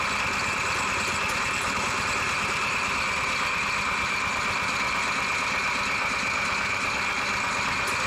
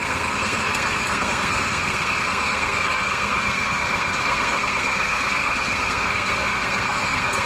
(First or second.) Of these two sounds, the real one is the first